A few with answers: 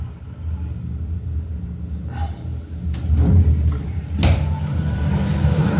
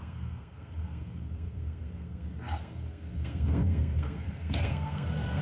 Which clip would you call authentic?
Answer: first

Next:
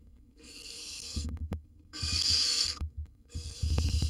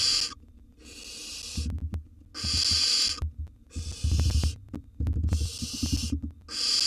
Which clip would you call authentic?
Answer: second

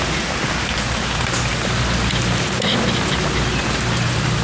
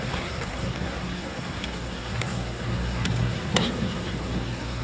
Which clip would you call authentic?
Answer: first